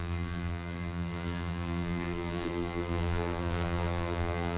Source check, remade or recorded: remade